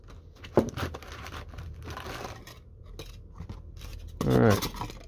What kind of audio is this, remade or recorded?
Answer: recorded